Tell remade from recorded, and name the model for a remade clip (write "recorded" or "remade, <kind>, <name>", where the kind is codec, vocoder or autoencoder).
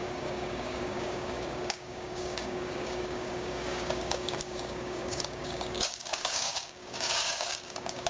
remade, codec, DAC